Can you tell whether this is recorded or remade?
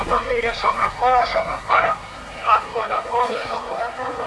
remade